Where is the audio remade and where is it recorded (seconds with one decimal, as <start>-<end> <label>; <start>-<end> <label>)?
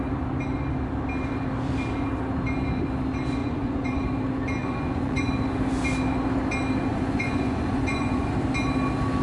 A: 0.0-3.4 recorded; 3.4-4.0 remade; 4.0-4.6 recorded; 4.6-5.3 remade; 5.3-6.9 recorded; 6.9-8.3 remade; 8.3-9.2 recorded